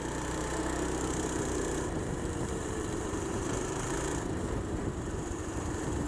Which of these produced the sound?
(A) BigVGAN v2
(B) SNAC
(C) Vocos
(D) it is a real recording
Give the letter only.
A